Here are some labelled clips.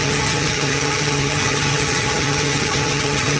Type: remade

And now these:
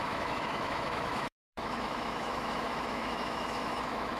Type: remade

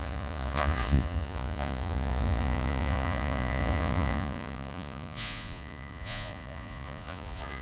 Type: remade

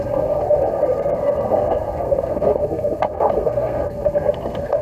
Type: remade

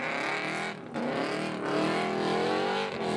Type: recorded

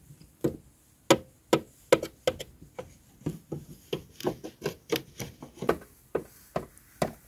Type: recorded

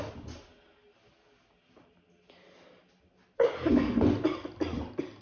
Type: recorded